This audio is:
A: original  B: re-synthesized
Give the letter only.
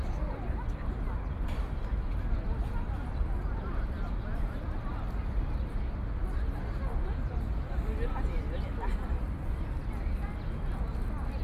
A